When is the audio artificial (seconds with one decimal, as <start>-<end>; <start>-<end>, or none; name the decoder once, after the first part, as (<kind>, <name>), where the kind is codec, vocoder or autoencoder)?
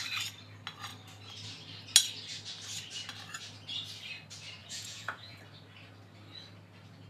4.6-5.4 (vocoder, Vocos)